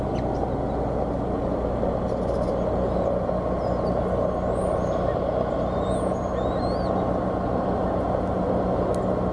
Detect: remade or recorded recorded